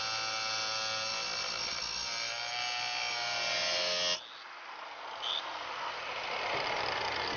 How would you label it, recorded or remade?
recorded